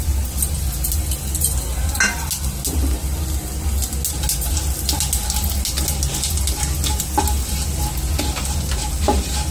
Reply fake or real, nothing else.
real